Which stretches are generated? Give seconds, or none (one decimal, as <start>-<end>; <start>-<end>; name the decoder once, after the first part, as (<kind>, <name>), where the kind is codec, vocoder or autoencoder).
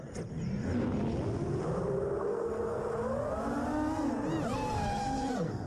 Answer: 2.2-2.8 (codec, SNAC); 5.0-5.7